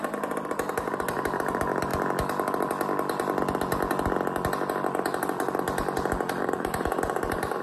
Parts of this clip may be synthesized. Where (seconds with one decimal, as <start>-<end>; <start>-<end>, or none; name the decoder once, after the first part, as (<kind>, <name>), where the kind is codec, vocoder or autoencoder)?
0.0-1.9 (vocoder, BigVGAN v2); 6.4-7.6